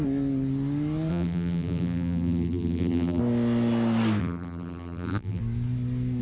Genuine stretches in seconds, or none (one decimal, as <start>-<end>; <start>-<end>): 0.0-1.1; 3.2-4.2; 5.4-6.2